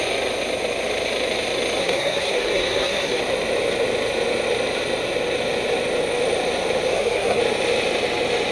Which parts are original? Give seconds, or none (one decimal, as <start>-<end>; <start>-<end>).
0.0-1.8; 3.2-6.9; 7.4-8.5